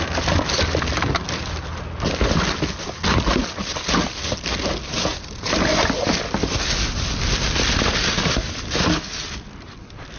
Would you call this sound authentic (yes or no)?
yes